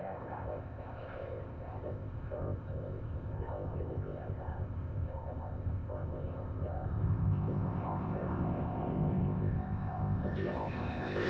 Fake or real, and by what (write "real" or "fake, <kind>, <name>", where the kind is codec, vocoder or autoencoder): fake, codec, ZipCodec